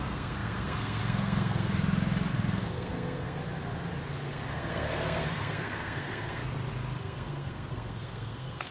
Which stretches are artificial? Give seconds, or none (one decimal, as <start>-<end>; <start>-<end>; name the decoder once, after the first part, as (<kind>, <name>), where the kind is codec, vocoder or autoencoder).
0.0-1.7 (codec, SNAC); 2.3-3.4; 4.2-6.4; 7.0-8.7